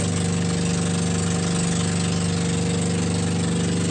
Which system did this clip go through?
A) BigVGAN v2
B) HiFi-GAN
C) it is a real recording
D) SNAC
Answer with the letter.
C